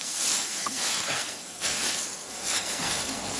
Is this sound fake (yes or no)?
yes